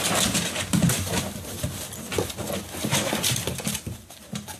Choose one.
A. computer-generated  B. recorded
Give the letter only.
B